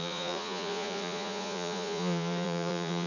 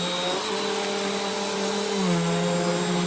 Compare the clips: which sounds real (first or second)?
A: second